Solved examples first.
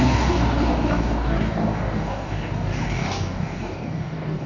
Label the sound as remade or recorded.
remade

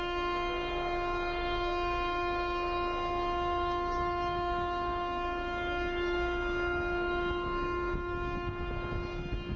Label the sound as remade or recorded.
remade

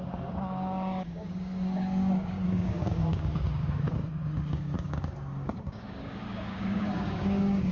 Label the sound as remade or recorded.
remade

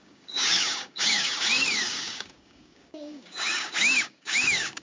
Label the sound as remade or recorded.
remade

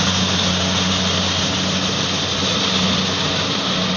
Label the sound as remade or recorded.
recorded